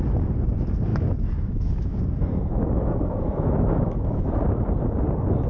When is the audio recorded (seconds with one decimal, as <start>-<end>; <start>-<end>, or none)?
0.0-0.9; 4.2-5.5